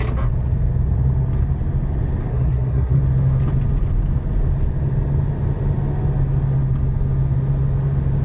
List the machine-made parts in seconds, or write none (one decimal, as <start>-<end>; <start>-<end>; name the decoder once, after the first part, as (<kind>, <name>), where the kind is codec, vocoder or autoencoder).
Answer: 2.3-3.0 (codec, SNAC)